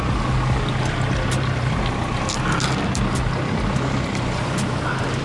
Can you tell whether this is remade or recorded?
recorded